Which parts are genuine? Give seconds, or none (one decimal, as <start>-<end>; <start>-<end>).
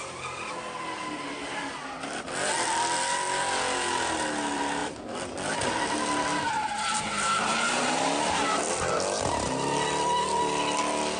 0.0-11.2